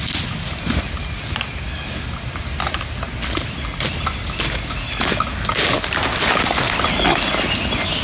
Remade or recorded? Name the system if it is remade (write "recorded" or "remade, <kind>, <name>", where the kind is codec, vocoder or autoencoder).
recorded